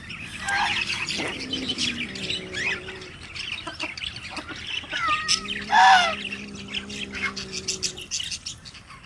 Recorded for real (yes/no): yes